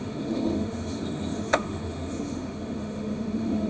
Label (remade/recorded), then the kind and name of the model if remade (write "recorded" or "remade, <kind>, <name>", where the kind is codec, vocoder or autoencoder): remade, autoencoder, DAC-VAE